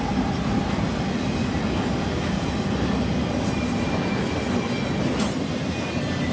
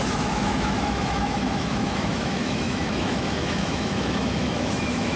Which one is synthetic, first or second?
second